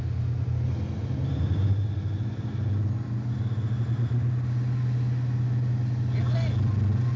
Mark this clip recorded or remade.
recorded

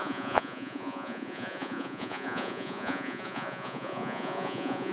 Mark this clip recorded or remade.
remade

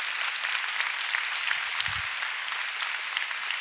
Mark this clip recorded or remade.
recorded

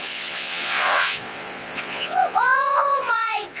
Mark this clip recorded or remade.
remade